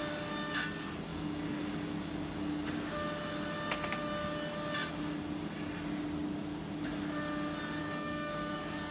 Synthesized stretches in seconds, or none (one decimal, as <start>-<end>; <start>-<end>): 1.1-2.7; 7.8-8.9